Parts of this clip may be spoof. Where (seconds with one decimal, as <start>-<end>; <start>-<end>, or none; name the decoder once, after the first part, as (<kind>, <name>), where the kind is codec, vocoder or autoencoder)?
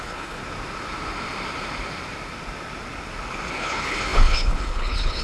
0.0-0.4 (codec, HILCodec); 3.5-5.2